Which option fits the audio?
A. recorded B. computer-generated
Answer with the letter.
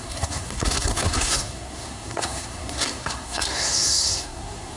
B